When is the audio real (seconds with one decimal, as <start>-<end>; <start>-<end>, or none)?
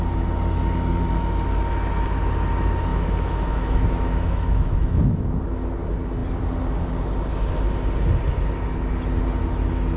0.0-2.9; 5.4-10.0